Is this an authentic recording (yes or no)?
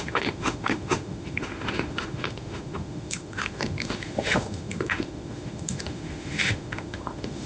no